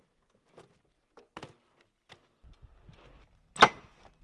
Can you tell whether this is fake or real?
real